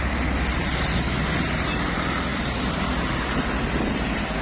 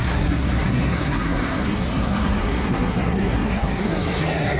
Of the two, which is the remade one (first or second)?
second